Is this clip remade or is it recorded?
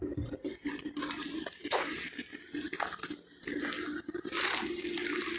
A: recorded